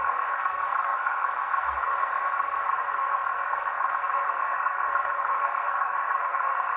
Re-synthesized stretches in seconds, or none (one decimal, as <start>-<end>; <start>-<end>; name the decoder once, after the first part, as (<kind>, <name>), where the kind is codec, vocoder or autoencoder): 0.0-6.8 (codec, SNAC)

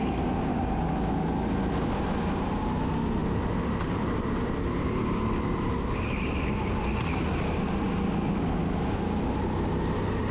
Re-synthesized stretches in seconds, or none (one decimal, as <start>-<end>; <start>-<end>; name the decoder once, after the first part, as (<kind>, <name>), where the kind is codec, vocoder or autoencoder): 0.5-1.1 (codec, DAC)

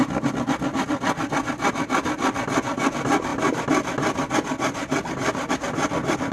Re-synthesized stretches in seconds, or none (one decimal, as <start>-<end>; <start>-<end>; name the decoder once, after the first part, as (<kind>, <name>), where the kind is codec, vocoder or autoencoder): none

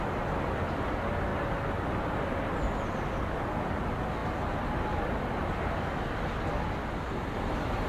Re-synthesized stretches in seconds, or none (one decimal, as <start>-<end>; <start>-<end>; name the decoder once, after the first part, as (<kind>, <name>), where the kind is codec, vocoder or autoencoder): none

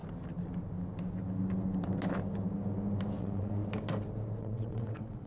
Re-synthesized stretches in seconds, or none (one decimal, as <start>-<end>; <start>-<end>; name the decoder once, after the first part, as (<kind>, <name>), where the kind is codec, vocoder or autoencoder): 3.2-3.6 (vocoder, WaveNeXt); 4.4-5.3

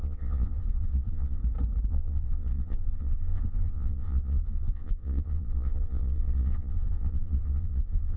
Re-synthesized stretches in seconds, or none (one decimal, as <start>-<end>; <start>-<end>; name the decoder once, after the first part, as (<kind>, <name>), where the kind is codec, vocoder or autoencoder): 0.0-1.4 (vocoder, Vocos); 1.9-8.2

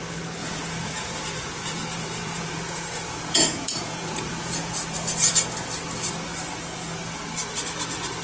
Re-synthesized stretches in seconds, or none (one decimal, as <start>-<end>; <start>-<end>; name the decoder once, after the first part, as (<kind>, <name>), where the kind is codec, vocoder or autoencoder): 0.4-4.7 (vocoder, Vocos)

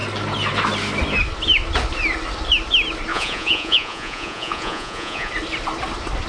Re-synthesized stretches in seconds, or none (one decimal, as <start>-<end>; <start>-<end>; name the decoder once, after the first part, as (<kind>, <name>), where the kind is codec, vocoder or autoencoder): 3.1-5.3 (vocoder, Vocos)